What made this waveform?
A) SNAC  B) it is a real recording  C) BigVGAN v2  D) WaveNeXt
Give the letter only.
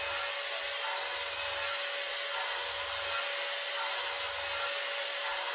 B